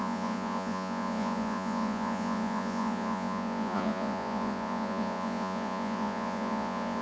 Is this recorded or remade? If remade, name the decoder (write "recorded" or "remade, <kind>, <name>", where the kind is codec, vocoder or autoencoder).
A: remade, vocoder, Vocos